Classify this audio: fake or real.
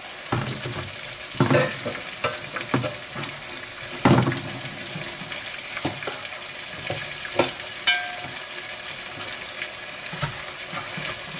real